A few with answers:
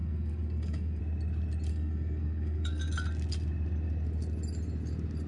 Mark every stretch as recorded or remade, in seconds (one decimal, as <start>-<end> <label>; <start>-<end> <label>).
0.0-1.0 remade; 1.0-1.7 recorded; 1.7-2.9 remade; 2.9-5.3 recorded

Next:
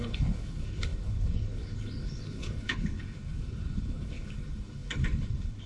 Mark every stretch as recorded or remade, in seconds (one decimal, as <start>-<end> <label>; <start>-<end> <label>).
0.0-5.7 remade

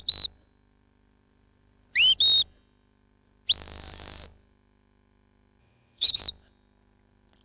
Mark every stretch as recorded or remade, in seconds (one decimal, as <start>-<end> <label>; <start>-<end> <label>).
0.0-5.6 recorded; 5.6-6.2 remade; 6.2-7.4 recorded